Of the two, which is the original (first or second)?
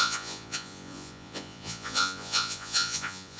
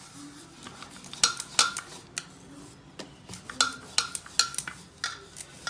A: second